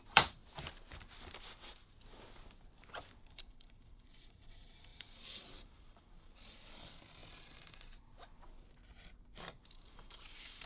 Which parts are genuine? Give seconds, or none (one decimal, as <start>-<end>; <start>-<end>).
0.4-3.3; 7.2-9.7